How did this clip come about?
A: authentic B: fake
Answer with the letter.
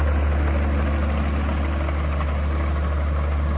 A